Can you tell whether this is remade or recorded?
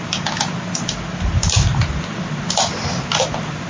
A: recorded